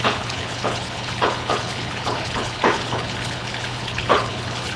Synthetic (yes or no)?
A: yes